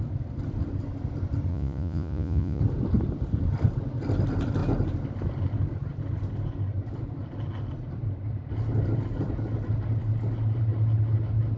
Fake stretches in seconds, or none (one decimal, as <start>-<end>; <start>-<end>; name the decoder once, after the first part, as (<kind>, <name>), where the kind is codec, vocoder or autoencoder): 1.5-2.6 (vocoder, Vocos)